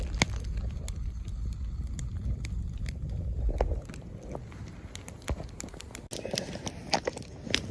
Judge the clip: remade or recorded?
recorded